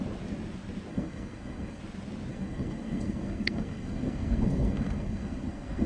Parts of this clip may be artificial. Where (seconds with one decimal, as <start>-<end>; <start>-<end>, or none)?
0.9-1.8; 2.3-5.9